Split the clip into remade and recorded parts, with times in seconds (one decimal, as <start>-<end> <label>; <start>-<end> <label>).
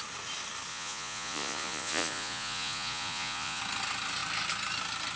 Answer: 0.0-0.7 recorded; 0.7-3.6 remade; 3.6-5.2 recorded